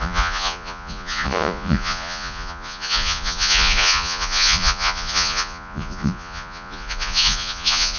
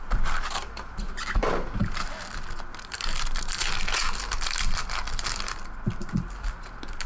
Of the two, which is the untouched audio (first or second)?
second